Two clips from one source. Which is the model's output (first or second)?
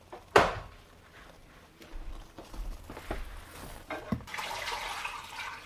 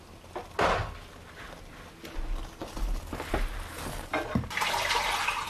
first